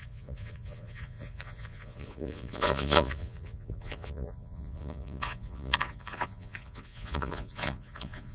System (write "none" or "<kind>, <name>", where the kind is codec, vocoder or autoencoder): vocoder, Vocos